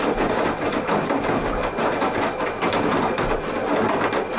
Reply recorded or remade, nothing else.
recorded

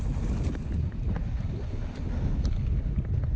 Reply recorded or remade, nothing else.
recorded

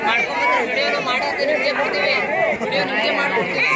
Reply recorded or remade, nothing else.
recorded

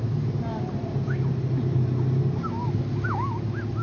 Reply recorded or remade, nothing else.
recorded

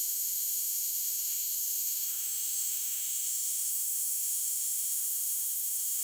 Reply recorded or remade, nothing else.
remade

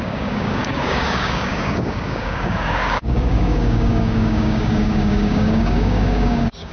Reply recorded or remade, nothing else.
remade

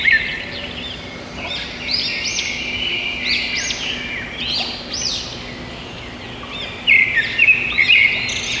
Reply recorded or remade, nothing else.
recorded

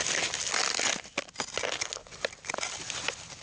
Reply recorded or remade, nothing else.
recorded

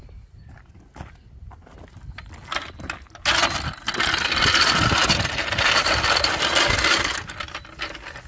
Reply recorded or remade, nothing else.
recorded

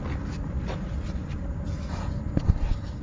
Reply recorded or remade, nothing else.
recorded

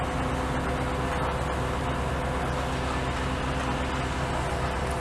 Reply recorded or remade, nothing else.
recorded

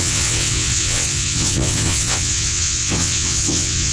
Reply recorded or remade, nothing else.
remade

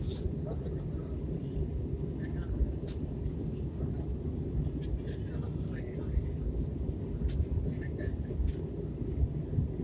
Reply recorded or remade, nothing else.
recorded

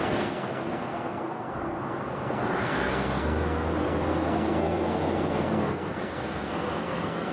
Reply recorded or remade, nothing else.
remade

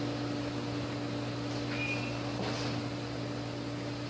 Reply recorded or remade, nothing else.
recorded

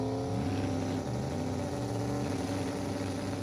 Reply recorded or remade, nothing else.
recorded